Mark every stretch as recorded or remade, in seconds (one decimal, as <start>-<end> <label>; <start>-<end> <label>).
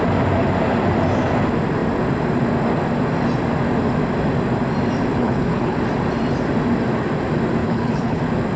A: 0.0-5.1 recorded; 5.1-5.8 remade; 5.8-7.6 recorded; 7.6-8.2 remade; 8.2-8.6 recorded